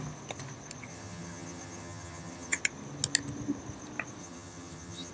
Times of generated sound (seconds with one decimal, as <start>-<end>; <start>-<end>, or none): 0.9-2.6; 4.2-5.1